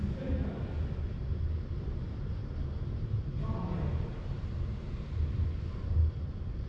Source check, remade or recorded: recorded